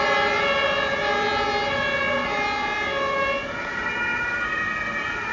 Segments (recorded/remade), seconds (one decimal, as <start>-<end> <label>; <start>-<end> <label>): 0.0-5.3 recorded